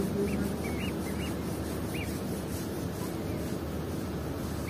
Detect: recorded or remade recorded